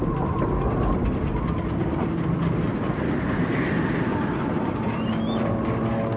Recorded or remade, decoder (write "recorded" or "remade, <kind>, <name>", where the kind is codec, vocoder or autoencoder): recorded